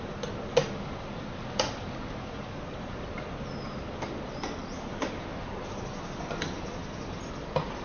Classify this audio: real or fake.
real